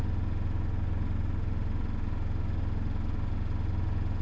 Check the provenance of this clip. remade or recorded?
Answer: recorded